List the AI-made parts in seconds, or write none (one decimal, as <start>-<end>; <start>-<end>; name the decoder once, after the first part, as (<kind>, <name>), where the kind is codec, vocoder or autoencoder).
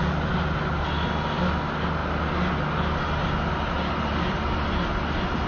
none